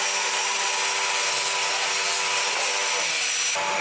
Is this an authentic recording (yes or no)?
yes